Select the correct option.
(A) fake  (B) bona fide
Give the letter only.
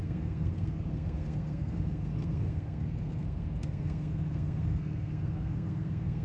A